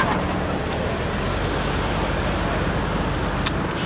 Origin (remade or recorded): recorded